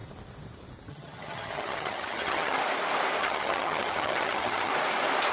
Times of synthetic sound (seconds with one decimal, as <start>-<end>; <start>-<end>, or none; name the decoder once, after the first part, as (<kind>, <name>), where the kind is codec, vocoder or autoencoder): 0.9-2.6 (vocoder, HiFi-GAN); 3.2-4.7

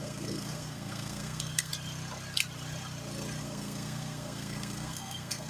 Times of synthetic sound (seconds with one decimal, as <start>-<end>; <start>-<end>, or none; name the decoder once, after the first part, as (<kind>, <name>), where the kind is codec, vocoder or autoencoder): 0.0-1.7 (codec, SNAC); 3.4-5.5